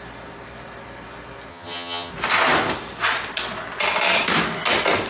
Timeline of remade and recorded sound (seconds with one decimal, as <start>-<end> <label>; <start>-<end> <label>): 0.0-1.5 recorded; 1.5-2.1 remade; 2.1-5.1 recorded

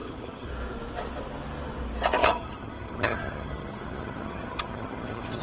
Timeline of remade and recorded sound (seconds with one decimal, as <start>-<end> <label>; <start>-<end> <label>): 0.0-0.5 remade; 0.5-2.2 recorded; 2.2-5.4 remade

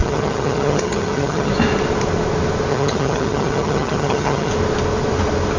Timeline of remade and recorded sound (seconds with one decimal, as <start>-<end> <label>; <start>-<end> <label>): 0.0-1.5 remade; 1.5-2.7 recorded; 2.7-4.5 remade; 4.5-5.6 recorded

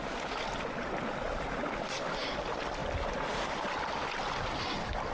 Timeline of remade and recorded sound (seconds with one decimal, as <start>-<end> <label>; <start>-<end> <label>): 0.0-5.1 recorded

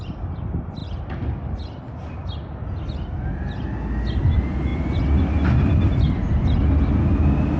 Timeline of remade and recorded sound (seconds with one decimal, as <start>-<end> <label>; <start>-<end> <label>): 0.0-7.6 recorded

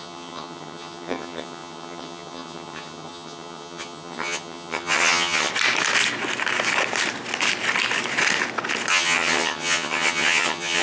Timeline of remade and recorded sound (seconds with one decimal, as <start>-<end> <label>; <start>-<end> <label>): 0.0-5.5 remade; 5.5-8.9 recorded; 8.9-10.8 remade

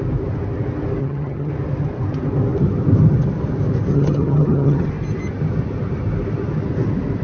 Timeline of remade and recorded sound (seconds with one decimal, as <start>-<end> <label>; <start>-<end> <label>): 0.0-1.0 recorded; 1.0-1.5 remade; 1.5-3.9 recorded; 3.9-4.9 remade; 4.9-7.2 recorded